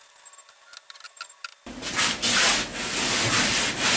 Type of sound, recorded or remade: recorded